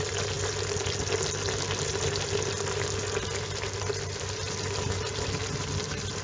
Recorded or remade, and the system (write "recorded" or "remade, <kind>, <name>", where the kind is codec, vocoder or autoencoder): recorded